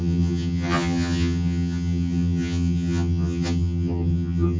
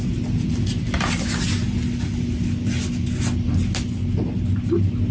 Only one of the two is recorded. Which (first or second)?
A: second